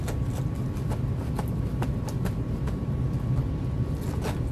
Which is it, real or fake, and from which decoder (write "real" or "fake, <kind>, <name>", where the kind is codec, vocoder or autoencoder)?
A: real